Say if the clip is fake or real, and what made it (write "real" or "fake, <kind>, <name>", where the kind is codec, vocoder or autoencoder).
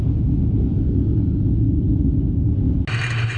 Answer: real